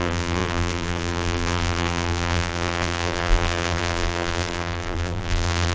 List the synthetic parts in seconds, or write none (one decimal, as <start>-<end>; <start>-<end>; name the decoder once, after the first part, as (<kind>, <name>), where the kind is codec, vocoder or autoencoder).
0.0-5.7 (vocoder, BigVGAN v2)